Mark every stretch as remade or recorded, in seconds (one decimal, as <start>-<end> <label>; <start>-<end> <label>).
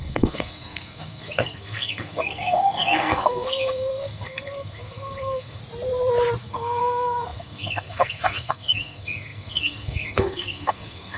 0.0-5.6 remade; 5.6-6.4 recorded; 6.4-11.2 remade